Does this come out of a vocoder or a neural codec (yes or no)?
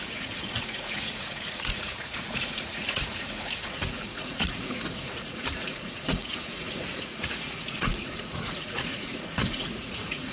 yes